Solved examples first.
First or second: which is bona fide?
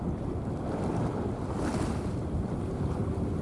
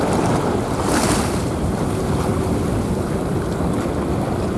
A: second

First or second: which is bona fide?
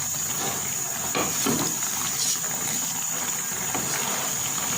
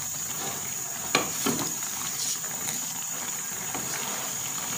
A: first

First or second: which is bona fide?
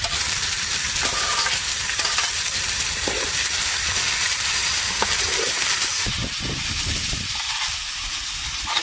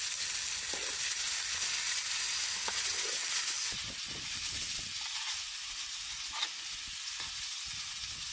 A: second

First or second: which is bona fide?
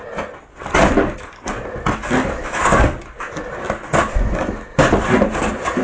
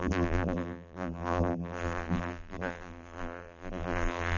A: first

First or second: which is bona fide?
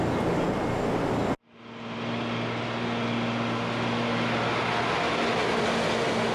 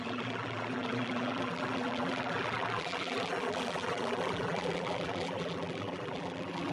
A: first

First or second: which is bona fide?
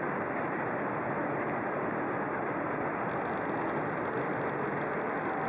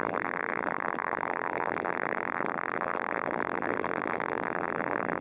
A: first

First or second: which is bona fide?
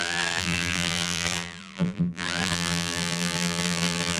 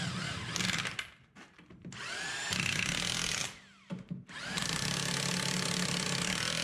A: second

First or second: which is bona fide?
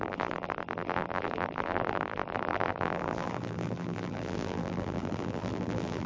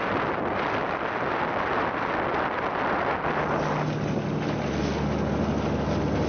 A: second